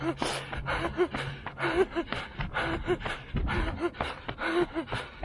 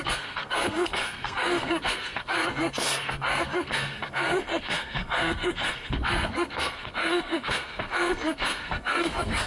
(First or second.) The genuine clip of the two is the first